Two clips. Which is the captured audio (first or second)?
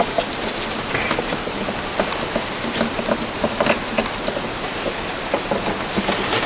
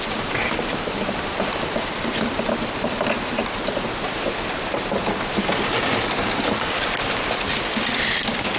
first